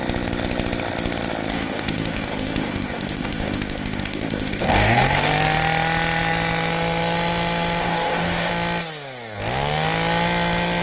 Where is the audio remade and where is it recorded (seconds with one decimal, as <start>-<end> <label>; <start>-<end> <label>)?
0.0-1.5 recorded; 1.5-5.3 remade; 5.3-7.8 recorded; 7.8-8.5 remade; 8.5-10.8 recorded

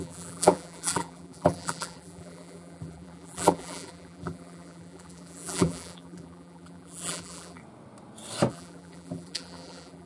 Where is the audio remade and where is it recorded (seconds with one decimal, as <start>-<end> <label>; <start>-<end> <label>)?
0.0-7.6 remade; 7.6-8.5 recorded; 8.5-10.1 remade

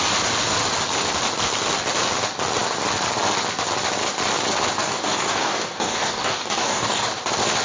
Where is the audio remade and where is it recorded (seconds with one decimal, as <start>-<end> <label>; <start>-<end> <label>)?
0.0-4.8 recorded; 4.8-7.1 remade; 7.1-7.6 recorded